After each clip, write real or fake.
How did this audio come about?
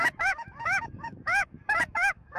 fake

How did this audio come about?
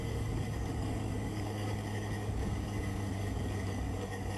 fake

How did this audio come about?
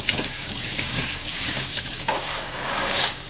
fake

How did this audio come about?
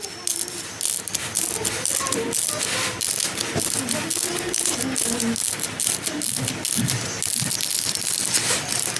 real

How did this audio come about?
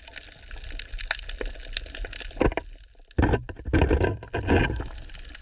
real